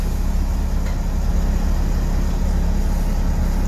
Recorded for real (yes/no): yes